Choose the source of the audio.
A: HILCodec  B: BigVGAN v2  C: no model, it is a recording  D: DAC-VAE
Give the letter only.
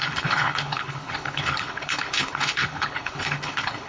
A